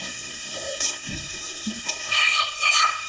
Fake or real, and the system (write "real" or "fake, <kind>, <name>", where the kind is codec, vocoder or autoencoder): fake, codec, SNAC